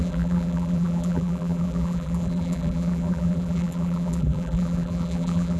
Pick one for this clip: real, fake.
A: fake